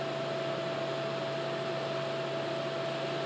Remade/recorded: recorded